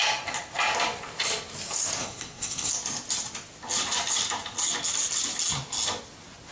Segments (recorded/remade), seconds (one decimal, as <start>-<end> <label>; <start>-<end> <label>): 0.0-2.0 recorded; 2.0-2.7 remade; 2.7-6.5 recorded